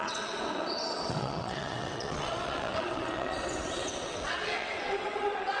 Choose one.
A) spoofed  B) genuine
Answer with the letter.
A